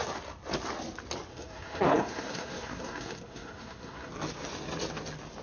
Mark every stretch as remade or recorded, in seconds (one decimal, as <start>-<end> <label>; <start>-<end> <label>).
0.0-1.3 recorded; 1.3-4.1 remade; 4.1-5.4 recorded